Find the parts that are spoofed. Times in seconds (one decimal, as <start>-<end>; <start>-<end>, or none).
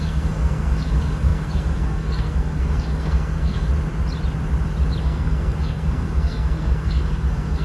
0.0-3.7; 5.0-7.6